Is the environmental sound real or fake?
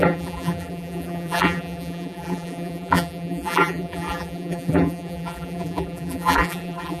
fake